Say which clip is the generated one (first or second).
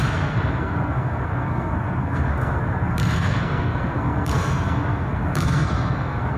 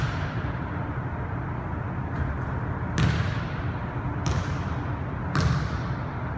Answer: first